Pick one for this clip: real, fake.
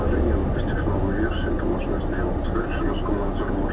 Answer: real